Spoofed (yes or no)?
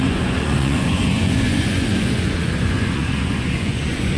yes